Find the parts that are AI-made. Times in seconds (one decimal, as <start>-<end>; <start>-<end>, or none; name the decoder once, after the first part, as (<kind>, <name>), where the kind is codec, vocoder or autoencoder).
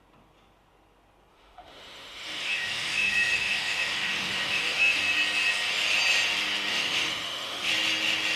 1.3-5.0 (autoencoder, DAC-VAE); 6.7-7.7